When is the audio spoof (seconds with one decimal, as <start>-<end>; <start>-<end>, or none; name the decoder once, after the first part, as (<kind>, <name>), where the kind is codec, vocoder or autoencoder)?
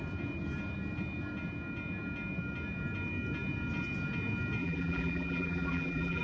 4.6-6.2 (vocoder, BigVGAN v2)